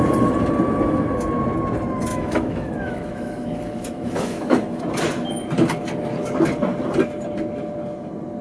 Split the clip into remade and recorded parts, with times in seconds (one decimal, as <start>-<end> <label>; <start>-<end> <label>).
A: 0.0-2.1 recorded; 2.1-4.8 remade; 4.8-8.4 recorded